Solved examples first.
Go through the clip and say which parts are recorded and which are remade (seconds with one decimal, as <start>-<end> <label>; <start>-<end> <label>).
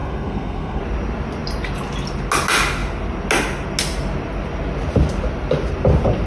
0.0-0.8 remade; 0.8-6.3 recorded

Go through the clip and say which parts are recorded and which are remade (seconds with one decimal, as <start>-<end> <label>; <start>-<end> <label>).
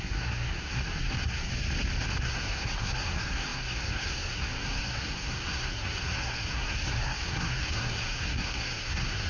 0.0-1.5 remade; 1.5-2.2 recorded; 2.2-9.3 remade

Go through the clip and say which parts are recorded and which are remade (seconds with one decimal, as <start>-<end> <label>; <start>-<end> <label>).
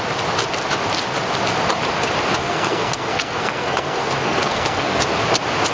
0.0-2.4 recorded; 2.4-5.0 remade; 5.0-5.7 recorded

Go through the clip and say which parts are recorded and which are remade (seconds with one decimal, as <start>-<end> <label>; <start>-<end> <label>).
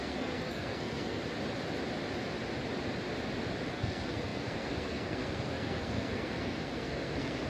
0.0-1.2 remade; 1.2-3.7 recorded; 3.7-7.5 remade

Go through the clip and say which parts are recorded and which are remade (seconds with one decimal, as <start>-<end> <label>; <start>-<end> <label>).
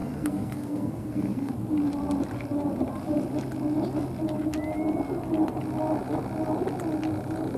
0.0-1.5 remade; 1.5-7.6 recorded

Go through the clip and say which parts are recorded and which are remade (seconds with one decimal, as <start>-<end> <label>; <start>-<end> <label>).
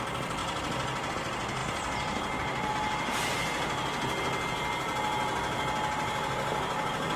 0.0-7.2 recorded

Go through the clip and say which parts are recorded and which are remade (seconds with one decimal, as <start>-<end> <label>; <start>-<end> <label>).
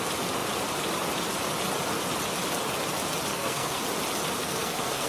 0.0-3.3 recorded; 3.3-3.8 remade; 3.8-4.4 recorded; 4.4-5.1 remade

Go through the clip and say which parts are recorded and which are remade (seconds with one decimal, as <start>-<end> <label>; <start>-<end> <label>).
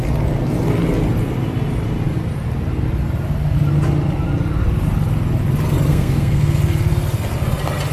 0.0-5.9 recorded; 5.9-6.6 remade; 6.6-7.9 recorded